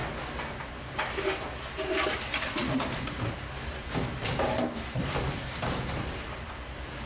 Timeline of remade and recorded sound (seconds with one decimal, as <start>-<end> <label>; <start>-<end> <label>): 0.0-4.1 recorded; 4.1-7.1 remade